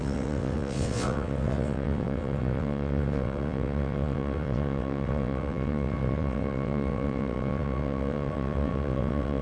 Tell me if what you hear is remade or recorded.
remade